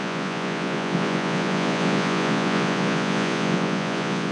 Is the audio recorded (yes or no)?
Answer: no